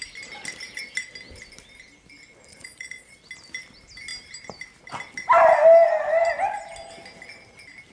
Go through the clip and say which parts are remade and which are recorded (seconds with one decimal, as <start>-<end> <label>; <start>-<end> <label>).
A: 0.0-2.5 recorded; 2.5-3.2 remade; 3.2-7.9 recorded